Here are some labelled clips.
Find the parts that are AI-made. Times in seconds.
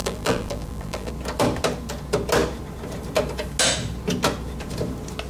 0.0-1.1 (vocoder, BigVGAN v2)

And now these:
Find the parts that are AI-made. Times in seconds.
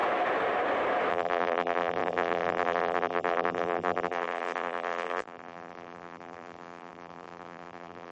1.1-8.1 (vocoder, BigVGAN v2)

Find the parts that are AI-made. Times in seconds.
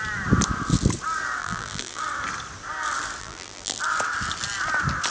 1.4-2.0 (vocoder, BigVGAN v2); 3.2-3.8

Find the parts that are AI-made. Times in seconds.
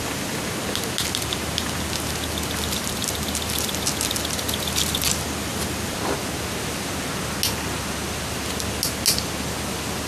none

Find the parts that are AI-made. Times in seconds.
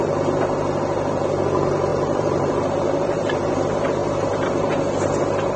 1.9-2.5 (vocoder, BigVGAN v2)